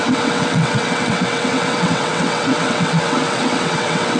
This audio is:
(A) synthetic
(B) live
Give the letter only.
A